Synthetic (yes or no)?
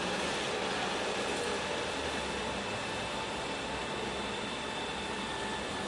no